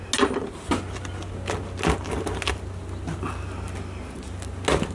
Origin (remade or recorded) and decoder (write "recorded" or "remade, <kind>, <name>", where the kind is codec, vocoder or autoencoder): recorded